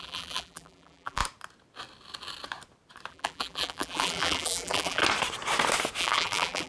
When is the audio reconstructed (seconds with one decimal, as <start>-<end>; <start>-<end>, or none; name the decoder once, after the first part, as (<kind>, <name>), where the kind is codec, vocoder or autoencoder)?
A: 0.0-1.2 (vocoder, BigVGAN v2); 3.1-5.0; 6.0-6.7